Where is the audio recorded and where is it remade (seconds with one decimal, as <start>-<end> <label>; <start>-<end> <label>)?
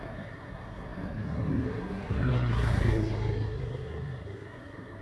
0.0-5.0 remade